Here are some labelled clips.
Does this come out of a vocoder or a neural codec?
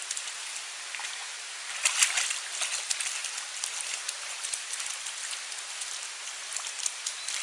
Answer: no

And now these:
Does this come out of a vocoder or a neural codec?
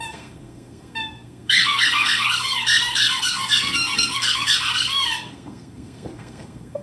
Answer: yes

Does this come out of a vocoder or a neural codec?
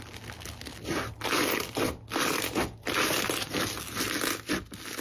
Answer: no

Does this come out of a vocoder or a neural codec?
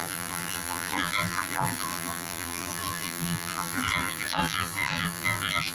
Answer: yes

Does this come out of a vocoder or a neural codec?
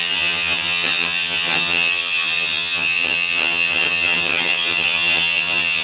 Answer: yes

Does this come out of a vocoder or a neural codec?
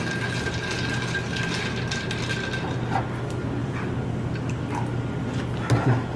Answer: no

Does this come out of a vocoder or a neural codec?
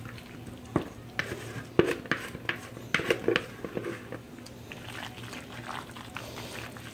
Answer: no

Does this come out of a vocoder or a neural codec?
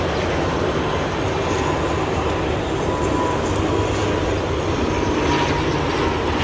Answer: no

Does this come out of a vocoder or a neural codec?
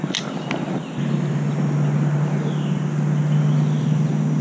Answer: no